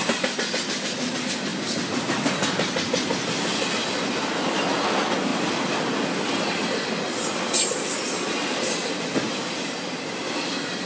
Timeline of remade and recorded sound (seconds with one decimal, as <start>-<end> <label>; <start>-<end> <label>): 0.0-10.9 recorded